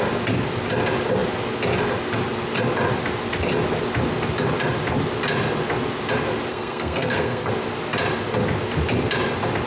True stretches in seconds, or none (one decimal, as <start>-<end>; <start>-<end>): 0.0-6.5; 7.5-9.7